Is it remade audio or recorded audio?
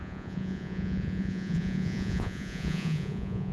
remade